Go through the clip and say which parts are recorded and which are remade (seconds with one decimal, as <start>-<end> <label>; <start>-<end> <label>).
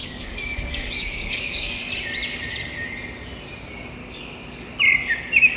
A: 0.0-1.8 remade; 1.8-4.0 recorded; 4.0-4.7 remade; 4.7-5.6 recorded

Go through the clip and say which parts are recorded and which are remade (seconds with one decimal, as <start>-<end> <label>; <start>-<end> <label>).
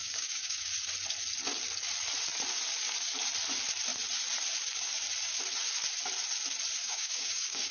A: 0.0-0.7 remade; 0.7-6.8 recorded; 6.8-7.7 remade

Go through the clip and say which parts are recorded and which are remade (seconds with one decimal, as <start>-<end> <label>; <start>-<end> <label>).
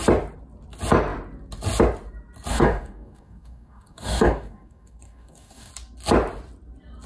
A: 0.0-2.5 recorded; 2.5-5.7 remade; 5.7-7.1 recorded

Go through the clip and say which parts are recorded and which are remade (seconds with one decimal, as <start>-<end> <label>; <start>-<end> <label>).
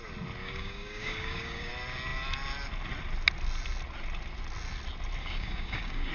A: 0.0-0.4 recorded; 0.4-1.7 remade; 1.7-5.2 recorded; 5.2-6.1 remade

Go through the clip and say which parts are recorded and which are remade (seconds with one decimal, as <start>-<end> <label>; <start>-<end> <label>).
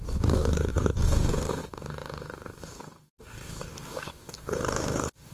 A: 0.0-5.3 remade